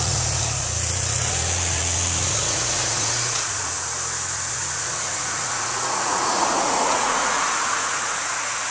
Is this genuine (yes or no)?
no